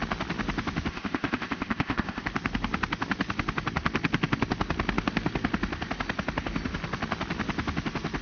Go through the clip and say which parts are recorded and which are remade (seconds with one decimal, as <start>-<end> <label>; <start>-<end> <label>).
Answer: 0.0-0.9 recorded; 0.9-2.2 remade; 2.2-8.2 recorded